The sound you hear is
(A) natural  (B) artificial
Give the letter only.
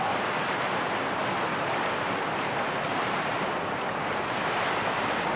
A